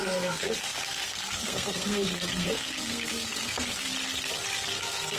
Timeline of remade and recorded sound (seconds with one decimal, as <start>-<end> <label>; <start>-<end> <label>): 0.0-3.9 remade; 3.9-4.8 recorded; 4.8-5.2 remade